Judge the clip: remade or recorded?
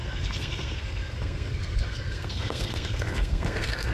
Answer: remade